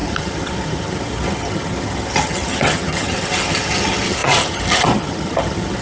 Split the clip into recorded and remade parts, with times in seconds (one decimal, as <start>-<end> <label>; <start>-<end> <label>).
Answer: 0.0-5.8 remade